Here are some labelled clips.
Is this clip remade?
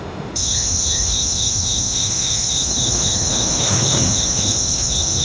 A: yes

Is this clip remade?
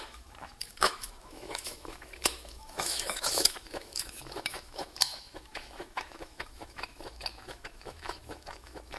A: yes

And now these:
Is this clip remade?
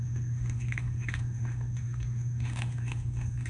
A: yes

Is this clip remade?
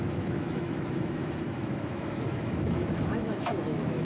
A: yes